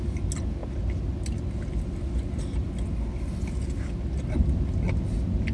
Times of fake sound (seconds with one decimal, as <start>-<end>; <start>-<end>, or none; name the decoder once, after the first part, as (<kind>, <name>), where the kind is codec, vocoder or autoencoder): none